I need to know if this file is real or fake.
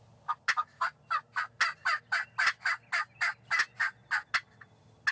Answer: real